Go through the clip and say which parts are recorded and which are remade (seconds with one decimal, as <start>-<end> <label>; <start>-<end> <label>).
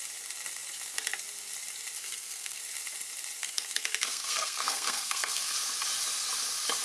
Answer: 0.0-2.0 recorded; 2.0-2.6 remade; 2.6-3.4 recorded; 3.4-5.5 remade; 5.5-6.8 recorded